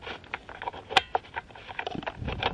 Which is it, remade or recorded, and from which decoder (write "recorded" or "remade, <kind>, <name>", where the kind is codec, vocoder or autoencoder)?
remade, vocoder, BigVGAN v2